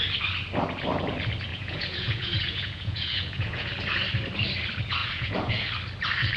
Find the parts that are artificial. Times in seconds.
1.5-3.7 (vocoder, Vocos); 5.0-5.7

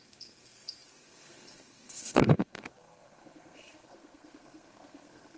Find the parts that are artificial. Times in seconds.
0.0-5.4 (codec, SNAC)

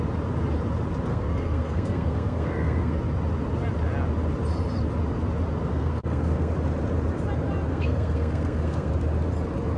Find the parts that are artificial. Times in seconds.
1.1-3.0 (codec, SNAC); 5.7-6.5; 7.7-8.9

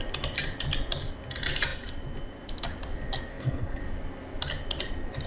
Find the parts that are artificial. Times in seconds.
3.3-3.8 (codec, SNAC)